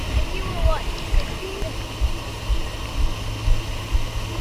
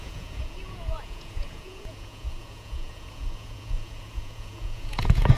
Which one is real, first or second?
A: first